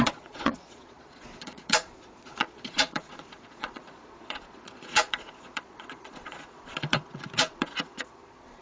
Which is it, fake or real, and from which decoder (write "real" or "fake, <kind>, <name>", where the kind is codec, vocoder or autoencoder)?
fake, vocoder, Vocos